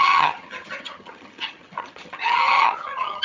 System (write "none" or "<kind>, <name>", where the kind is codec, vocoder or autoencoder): vocoder, HiFi-GAN